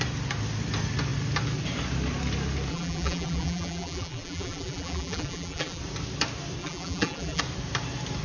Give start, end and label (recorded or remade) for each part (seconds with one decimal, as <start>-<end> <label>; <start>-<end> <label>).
0.0-2.7 recorded; 2.7-5.8 remade; 5.8-6.6 recorded; 6.6-7.4 remade; 7.4-8.2 recorded